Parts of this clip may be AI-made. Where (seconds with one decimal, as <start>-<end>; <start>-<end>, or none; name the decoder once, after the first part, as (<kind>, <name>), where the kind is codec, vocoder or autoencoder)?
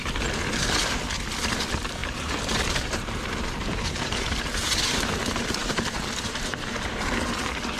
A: 2.0-4.4 (vocoder, BigVGAN v2); 5.6-7.2